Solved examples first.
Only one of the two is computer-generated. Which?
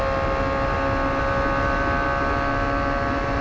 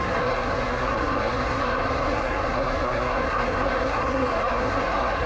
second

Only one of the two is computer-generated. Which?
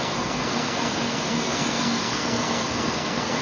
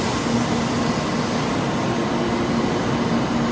first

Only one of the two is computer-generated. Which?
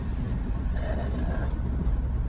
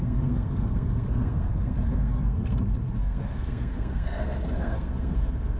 second